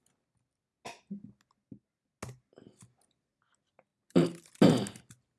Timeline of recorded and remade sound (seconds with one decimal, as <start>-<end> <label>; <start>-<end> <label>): 0.0-3.9 recorded; 3.9-4.5 remade; 4.5-5.4 recorded